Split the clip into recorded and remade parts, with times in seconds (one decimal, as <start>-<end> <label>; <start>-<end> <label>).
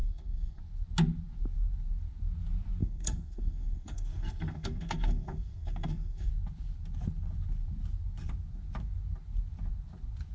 0.0-0.6 remade; 0.6-2.8 recorded; 2.8-6.3 remade; 6.3-10.3 recorded